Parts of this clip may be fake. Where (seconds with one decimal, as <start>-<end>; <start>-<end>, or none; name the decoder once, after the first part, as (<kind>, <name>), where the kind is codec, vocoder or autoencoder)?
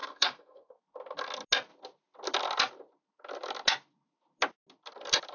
0.0-0.8 (codec, SNAC)